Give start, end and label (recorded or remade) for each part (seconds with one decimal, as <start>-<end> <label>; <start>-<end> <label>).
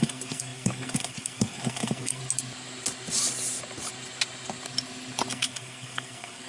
0.0-2.2 remade; 2.2-5.3 recorded; 5.3-6.5 remade